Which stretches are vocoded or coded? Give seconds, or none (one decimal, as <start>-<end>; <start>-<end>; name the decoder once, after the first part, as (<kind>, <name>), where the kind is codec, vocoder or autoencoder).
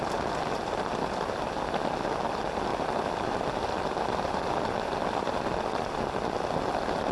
none